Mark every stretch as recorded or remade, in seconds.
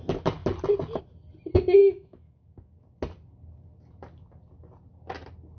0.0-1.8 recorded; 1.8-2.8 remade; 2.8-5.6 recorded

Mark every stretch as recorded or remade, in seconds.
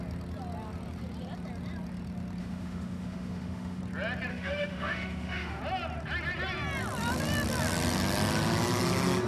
0.0-2.4 recorded; 2.4-3.8 remade; 3.8-4.3 recorded; 4.3-5.6 remade; 5.6-9.3 recorded